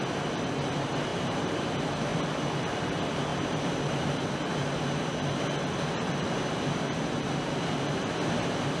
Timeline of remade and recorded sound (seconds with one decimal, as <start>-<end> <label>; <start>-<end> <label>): 0.0-1.1 recorded; 1.1-1.6 remade; 1.6-3.3 recorded; 3.3-4.2 remade; 4.2-8.8 recorded